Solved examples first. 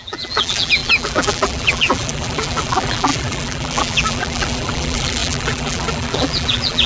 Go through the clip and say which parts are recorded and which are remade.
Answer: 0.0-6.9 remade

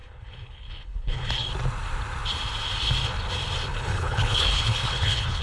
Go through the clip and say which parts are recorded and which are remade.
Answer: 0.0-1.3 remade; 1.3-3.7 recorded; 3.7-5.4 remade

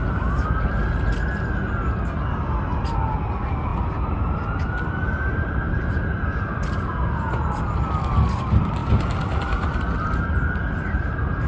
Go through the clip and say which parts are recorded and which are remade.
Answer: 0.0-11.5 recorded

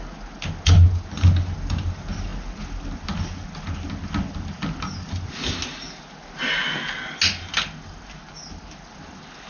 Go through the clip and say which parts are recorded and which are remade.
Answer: 0.0-9.5 recorded

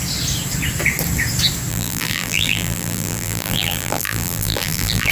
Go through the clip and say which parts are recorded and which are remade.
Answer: 0.0-1.7 recorded; 1.7-5.1 remade

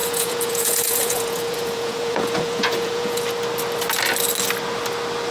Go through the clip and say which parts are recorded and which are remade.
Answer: 0.0-3.2 remade; 3.2-5.3 recorded

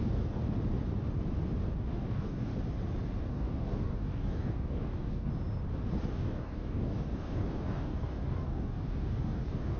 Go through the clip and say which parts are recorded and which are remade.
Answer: 0.0-0.4 remade; 0.4-1.9 recorded; 1.9-2.5 remade; 2.5-3.3 recorded; 3.3-5.3 remade; 5.3-6.1 recorded; 6.1-9.8 remade

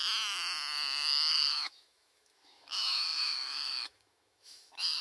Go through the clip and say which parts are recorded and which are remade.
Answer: 0.0-1.3 recorded; 1.3-5.0 remade